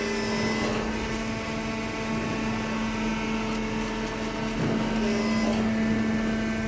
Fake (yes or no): no